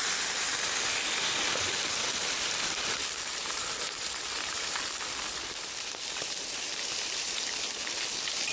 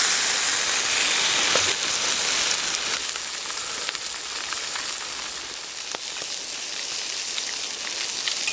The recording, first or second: second